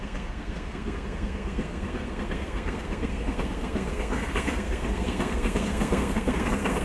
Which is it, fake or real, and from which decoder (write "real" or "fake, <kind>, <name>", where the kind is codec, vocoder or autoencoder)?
fake, codec, SNAC